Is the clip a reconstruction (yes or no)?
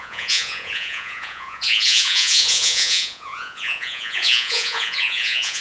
yes